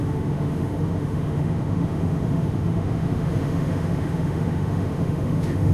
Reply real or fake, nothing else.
fake